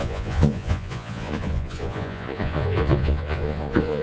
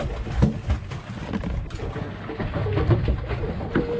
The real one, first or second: second